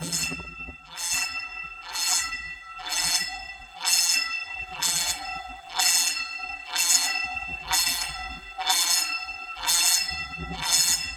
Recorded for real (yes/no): no